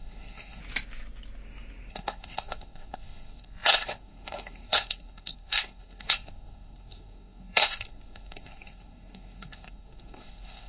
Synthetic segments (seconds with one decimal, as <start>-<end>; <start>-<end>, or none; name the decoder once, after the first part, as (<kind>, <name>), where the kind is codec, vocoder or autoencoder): 0.0-0.6 (codec, SNAC); 1.9-10.7